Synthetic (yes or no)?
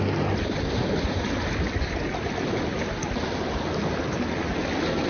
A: no